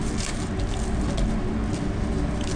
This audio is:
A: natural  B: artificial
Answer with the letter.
A